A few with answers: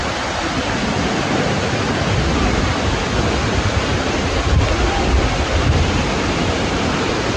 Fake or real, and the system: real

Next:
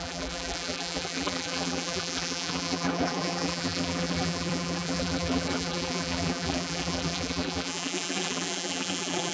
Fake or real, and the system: fake, vocoder, BigVGAN v2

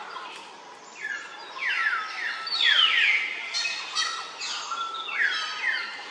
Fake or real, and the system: real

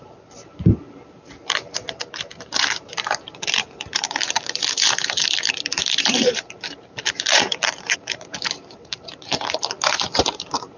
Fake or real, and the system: fake, vocoder, BigVGAN v2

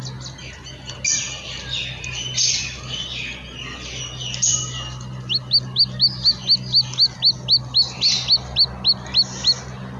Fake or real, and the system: real